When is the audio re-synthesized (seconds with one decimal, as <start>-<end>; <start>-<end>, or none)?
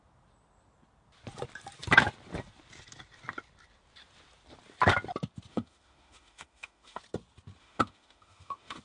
5.5-7.0; 7.6-8.8